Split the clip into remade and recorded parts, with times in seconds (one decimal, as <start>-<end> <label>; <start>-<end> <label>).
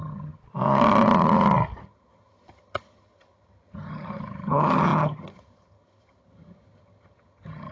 0.0-0.4 remade; 0.4-1.8 recorded; 1.8-7.7 remade